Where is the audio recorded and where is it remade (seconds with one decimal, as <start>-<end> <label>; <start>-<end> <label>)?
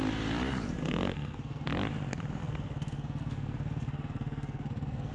0.0-0.8 recorded; 0.8-1.7 remade; 1.7-2.4 recorded; 2.4-5.1 remade